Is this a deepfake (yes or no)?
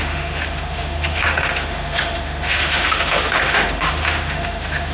yes